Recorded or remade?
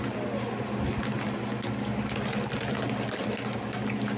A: recorded